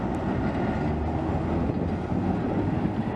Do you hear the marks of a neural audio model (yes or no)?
no